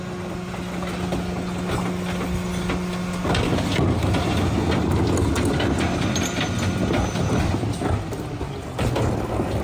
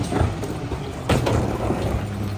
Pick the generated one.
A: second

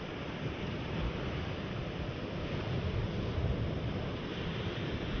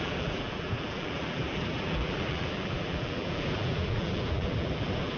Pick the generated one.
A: second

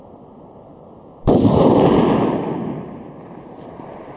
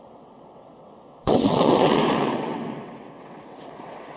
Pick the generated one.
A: second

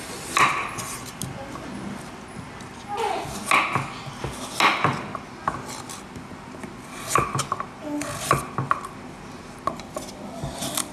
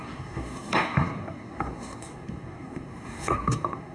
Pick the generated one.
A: second